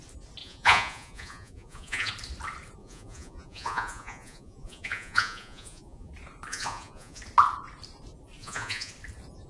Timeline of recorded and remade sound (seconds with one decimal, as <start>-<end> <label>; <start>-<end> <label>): 0.0-0.4 recorded; 0.4-2.1 remade; 2.1-2.8 recorded; 2.8-6.1 remade; 6.1-6.5 recorded; 6.5-7.2 remade; 7.2-8.4 recorded; 8.4-8.9 remade; 8.9-9.5 recorded